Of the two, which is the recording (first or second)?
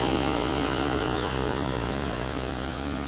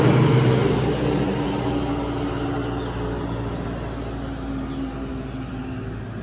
second